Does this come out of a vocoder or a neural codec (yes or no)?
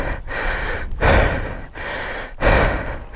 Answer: no